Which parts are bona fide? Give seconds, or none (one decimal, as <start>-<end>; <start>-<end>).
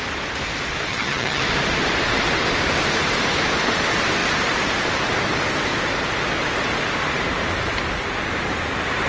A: 0.0-0.9; 1.4-9.1